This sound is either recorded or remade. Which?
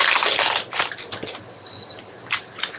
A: recorded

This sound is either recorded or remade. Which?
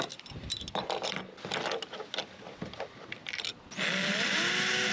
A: recorded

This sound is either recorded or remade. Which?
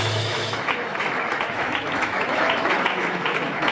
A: remade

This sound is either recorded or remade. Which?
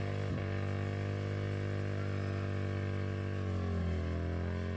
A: recorded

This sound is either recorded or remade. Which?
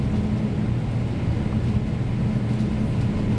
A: recorded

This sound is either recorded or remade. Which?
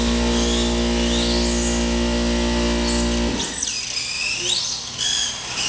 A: recorded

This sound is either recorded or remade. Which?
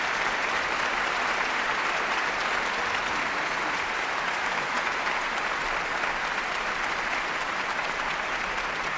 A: recorded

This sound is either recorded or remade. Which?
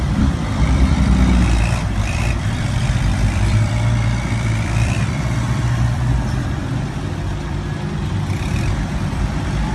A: remade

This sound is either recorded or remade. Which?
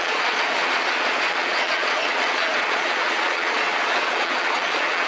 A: remade